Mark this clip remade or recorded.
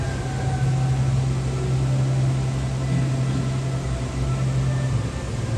recorded